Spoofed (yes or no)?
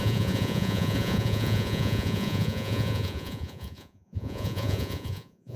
yes